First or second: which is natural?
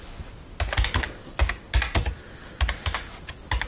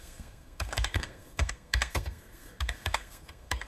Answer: first